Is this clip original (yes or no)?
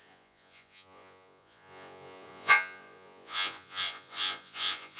no